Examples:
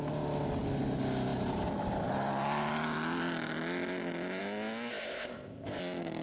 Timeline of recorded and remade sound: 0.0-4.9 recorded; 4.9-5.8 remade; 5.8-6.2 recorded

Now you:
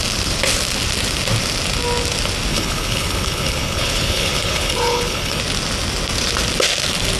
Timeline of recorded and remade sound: 0.0-2.5 recorded; 2.5-5.4 remade; 5.4-7.2 recorded

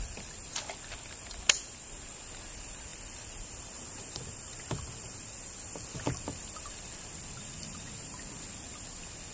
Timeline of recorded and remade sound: 0.0-2.9 recorded; 2.9-7.9 remade; 7.9-9.3 recorded

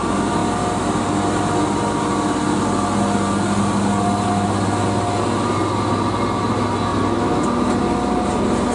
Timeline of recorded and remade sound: 0.0-8.7 recorded